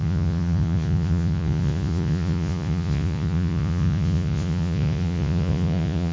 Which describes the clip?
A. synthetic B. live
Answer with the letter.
A